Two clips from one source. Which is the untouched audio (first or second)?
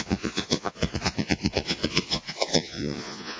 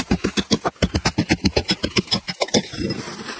second